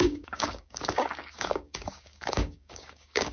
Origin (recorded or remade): remade